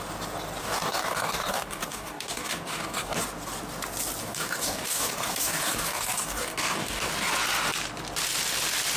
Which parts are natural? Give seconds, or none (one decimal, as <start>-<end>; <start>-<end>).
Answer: 0.0-0.6; 3.2-4.2; 7.1-9.0